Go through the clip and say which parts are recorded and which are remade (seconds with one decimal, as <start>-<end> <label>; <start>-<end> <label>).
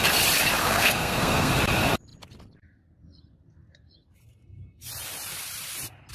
0.0-0.6 recorded; 0.6-1.5 remade; 1.5-6.1 recorded